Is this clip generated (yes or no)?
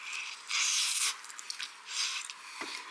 no